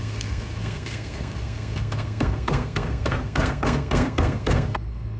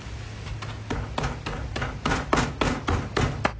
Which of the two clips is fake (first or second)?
first